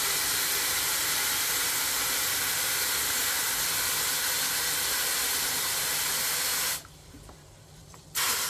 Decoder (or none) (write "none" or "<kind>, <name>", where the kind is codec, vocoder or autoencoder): none